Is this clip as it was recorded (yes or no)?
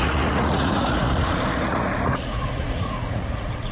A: no